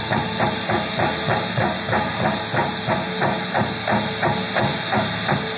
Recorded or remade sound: recorded